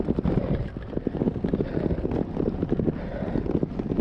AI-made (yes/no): no